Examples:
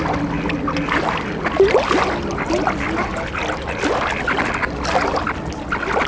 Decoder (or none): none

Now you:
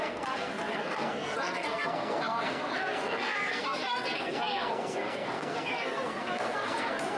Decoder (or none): codec, SNAC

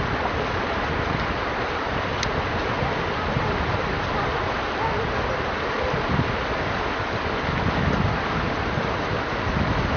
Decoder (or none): none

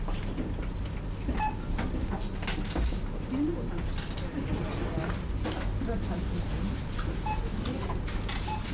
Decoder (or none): none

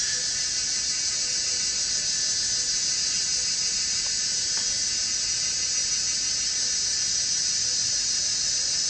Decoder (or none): none